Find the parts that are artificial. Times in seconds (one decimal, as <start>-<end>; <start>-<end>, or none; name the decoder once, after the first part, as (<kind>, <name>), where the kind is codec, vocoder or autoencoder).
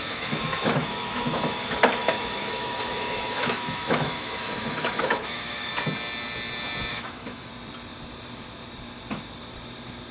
0.0-5.7 (autoencoder, DAC-VAE); 6.9-7.5